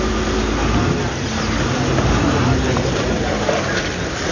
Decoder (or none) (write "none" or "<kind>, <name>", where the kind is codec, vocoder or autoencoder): none